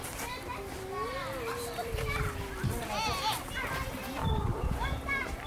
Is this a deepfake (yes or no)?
yes